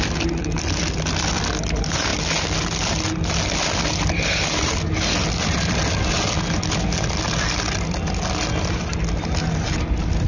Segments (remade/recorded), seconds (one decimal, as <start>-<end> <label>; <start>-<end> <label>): 0.0-10.3 recorded